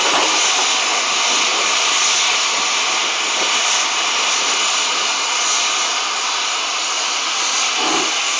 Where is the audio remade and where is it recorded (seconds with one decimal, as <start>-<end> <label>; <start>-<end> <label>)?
0.0-8.4 recorded